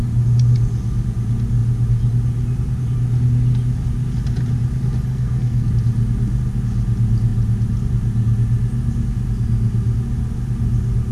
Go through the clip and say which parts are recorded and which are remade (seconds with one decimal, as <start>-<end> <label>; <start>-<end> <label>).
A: 0.0-5.1 recorded; 5.1-5.7 remade; 5.7-11.1 recorded